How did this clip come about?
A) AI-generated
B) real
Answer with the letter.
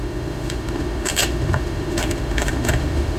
A